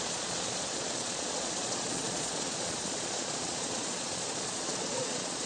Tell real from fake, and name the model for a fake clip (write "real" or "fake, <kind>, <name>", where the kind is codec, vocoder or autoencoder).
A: fake, vocoder, Vocos